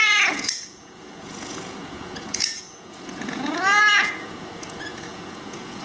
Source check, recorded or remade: remade